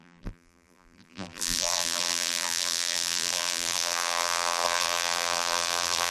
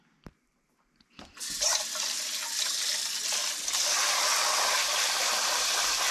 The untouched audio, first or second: second